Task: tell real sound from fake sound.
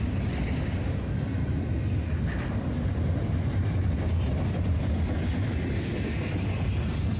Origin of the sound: real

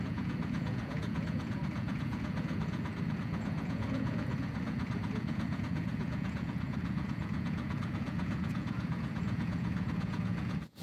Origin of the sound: fake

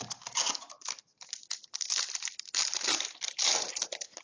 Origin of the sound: real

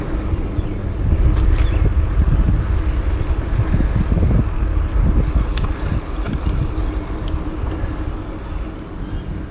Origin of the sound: real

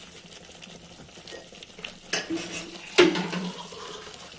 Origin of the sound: real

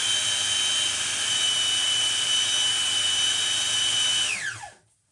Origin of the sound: real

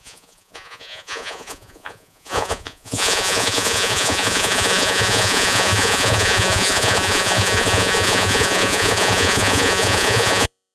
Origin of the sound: fake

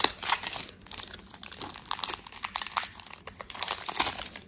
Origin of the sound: real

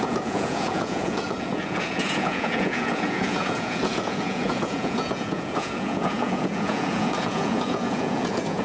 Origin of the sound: fake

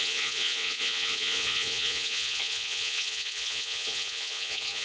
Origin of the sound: fake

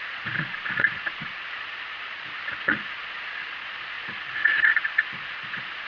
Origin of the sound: fake